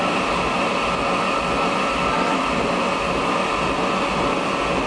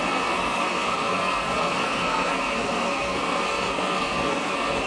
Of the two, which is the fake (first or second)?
second